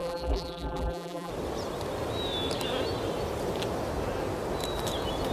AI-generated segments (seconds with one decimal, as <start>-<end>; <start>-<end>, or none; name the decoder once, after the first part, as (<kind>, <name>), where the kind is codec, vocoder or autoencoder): 0.0-1.3 (vocoder, BigVGAN v2)